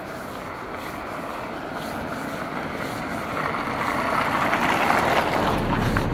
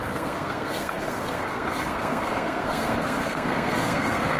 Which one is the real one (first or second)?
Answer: first